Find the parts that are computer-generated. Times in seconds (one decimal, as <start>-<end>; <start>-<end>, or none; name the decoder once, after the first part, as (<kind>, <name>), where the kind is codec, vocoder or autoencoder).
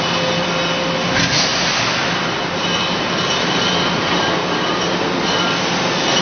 none